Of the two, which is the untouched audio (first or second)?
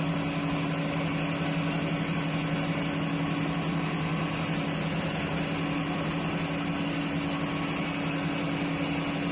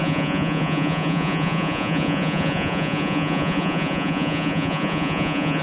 first